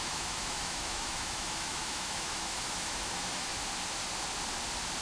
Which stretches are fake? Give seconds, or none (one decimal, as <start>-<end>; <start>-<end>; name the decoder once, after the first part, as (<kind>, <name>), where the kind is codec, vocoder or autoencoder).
0.0-3.5 (autoencoder, DAC-VAE)